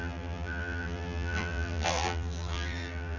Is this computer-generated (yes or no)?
yes